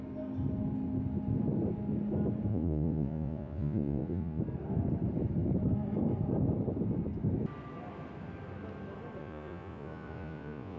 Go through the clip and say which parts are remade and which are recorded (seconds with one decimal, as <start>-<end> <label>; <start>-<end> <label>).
0.0-2.5 recorded; 2.5-4.4 remade; 4.4-9.2 recorded; 9.2-10.8 remade